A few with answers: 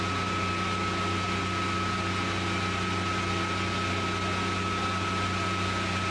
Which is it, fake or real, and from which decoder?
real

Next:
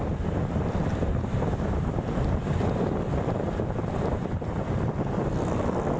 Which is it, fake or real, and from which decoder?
real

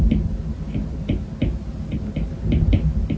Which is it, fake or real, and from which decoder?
real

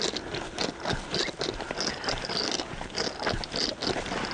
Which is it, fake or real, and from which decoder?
real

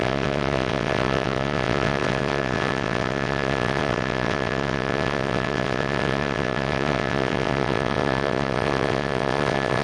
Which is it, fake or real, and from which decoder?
fake, vocoder, WaveNeXt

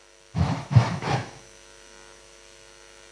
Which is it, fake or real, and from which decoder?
fake, autoencoder, DAC-VAE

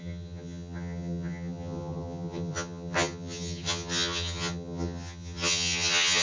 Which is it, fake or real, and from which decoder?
fake, vocoder, HiFi-GAN